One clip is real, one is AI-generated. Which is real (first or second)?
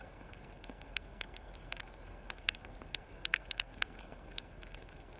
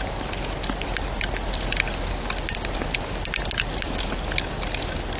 second